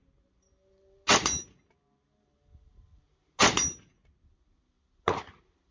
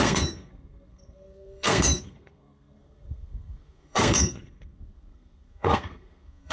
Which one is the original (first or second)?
first